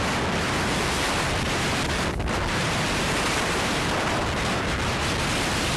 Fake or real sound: real